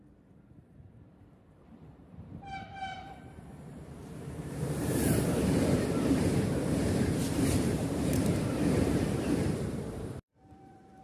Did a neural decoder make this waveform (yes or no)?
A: yes